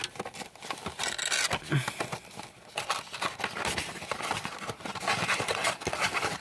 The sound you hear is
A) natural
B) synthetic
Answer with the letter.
A